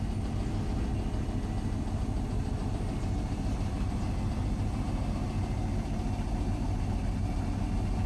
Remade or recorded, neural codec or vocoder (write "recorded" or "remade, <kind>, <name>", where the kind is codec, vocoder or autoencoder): recorded